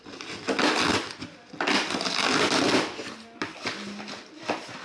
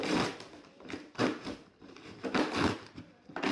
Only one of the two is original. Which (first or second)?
first